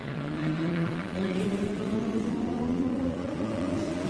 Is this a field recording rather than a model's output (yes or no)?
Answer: no